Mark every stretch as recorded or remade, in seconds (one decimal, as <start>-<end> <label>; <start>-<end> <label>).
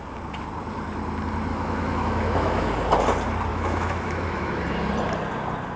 0.0-1.5 recorded; 1.5-2.7 remade; 2.7-3.5 recorded; 3.5-4.6 remade; 4.6-5.8 recorded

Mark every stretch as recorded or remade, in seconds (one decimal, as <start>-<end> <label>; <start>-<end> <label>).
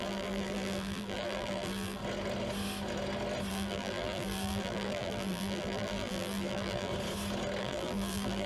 0.0-2.0 remade; 2.0-3.5 recorded; 3.5-6.9 remade; 6.9-7.6 recorded; 7.6-8.5 remade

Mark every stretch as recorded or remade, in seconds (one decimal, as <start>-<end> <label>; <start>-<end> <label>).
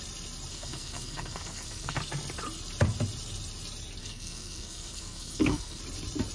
0.0-0.5 recorded; 0.5-2.0 remade; 2.0-4.0 recorded; 4.0-5.8 remade; 5.8-6.3 recorded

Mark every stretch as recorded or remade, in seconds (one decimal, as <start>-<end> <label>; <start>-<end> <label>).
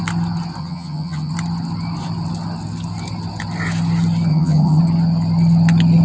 0.0-0.6 recorded; 0.6-1.3 remade; 1.3-4.3 recorded; 4.3-4.8 remade; 4.8-6.0 recorded